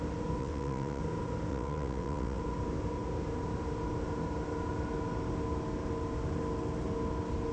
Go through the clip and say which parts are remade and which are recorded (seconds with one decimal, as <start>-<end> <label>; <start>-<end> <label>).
0.0-0.4 recorded; 0.4-1.0 remade; 1.0-1.5 recorded; 1.5-2.4 remade; 2.4-7.5 recorded